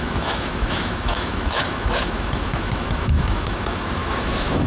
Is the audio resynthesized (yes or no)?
yes